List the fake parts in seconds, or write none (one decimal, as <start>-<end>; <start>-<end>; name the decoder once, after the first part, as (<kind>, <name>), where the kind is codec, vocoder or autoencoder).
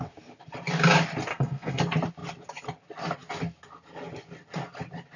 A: 1.3-1.8 (codec, SNAC)